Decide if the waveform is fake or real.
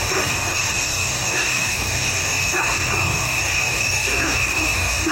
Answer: fake